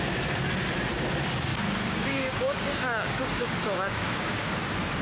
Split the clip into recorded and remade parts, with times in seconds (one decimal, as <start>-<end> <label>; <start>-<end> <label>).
0.0-1.5 recorded; 1.5-4.5 remade; 4.5-5.0 recorded